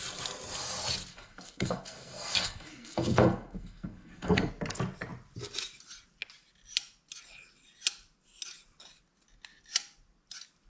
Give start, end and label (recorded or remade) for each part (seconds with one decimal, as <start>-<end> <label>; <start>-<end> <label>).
0.0-1.1 recorded; 1.1-4.5 remade; 4.5-10.7 recorded